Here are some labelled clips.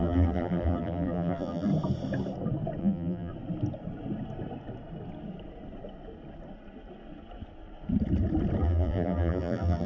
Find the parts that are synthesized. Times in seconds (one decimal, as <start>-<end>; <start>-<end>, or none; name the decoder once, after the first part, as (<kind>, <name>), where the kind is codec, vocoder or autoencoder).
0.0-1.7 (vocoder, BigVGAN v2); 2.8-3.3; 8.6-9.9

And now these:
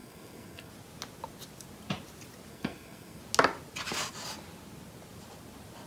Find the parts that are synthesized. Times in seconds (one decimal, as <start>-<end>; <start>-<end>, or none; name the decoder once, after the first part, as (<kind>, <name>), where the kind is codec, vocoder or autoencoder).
0.0-0.7 (codec, SNAC); 2.5-3.2

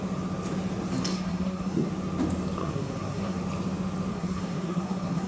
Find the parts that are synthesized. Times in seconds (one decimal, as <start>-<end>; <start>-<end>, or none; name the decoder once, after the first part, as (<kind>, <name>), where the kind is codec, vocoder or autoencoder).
1.1-1.9 (codec, SNAC); 2.6-3.4; 4.1-5.3

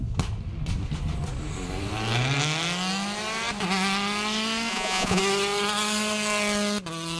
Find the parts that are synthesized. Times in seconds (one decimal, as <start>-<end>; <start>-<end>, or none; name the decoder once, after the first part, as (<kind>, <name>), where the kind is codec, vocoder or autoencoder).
4.7-5.2 (vocoder, Vocos)

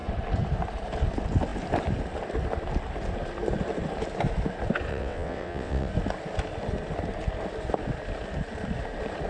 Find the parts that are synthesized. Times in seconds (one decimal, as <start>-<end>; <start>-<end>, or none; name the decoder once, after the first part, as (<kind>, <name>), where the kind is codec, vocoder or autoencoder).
4.9-5.9 (vocoder, WaveNeXt)

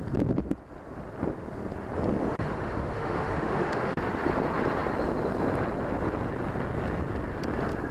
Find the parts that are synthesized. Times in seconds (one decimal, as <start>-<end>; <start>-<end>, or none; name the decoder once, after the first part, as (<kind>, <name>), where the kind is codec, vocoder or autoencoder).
2.2-4.0 (autoencoder, DAC-VAE)

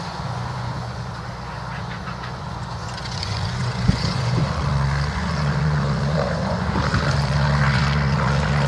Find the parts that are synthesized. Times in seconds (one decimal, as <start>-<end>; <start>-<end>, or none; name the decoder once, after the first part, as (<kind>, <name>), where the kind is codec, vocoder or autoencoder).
0.0-8.7 (vocoder, Vocos)

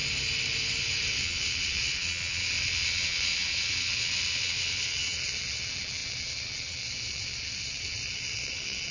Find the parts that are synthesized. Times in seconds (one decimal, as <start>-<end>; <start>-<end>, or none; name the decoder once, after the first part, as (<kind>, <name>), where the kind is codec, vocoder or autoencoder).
1.2-8.9 (vocoder, WaveNeXt)